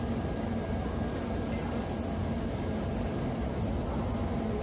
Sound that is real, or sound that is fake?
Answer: real